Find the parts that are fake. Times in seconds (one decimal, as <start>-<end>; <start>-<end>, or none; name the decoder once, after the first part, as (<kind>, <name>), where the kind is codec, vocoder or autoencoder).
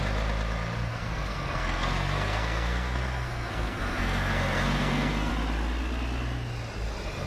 0.9-5.3 (codec, SNAC)